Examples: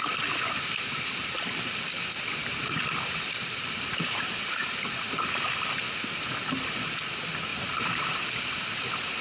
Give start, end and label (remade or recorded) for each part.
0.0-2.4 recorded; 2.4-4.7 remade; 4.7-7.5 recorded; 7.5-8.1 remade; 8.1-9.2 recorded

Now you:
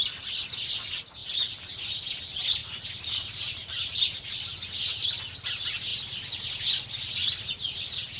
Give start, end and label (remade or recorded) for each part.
0.0-8.2 recorded

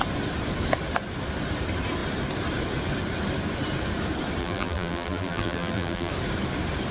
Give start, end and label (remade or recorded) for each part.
0.0-4.4 recorded; 4.4-6.1 remade; 6.1-6.9 recorded

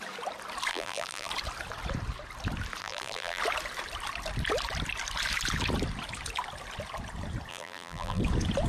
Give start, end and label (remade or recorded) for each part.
0.0-0.7 recorded; 0.7-1.3 remade; 1.3-2.8 recorded; 2.8-3.4 remade; 3.4-7.5 recorded; 7.5-8.2 remade; 8.2-8.7 recorded

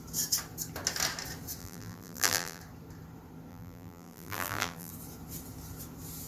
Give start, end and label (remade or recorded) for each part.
0.0-1.6 recorded; 1.6-2.6 remade; 2.6-3.5 recorded; 3.5-4.9 remade; 4.9-6.3 recorded

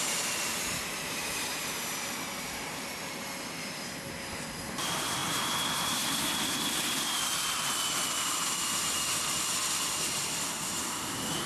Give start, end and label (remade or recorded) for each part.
0.0-2.1 remade; 2.1-11.5 recorded

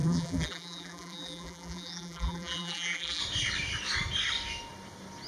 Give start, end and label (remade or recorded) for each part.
0.0-3.2 remade; 3.2-5.3 recorded

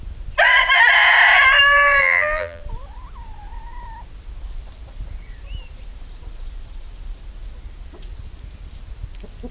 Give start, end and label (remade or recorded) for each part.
0.0-2.0 recorded; 2.0-2.6 remade; 2.6-9.5 recorded